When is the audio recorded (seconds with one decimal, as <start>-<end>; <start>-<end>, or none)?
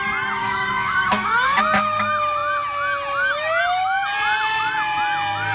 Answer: 0.0-0.4; 1.6-5.5